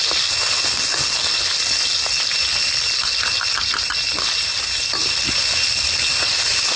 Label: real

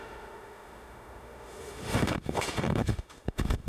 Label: fake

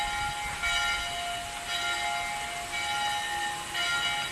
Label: real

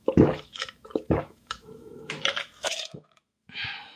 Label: fake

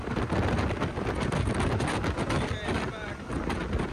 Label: real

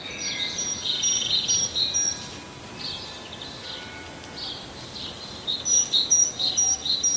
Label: real